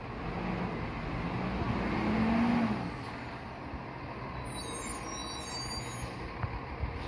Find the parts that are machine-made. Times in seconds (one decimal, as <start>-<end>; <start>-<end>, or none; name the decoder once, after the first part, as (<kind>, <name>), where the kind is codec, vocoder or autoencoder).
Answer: none